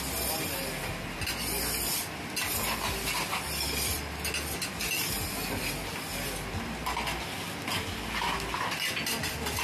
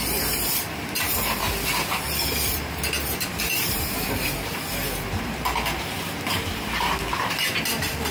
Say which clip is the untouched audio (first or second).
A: first